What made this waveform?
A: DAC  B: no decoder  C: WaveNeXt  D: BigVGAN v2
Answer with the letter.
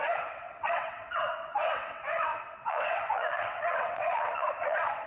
C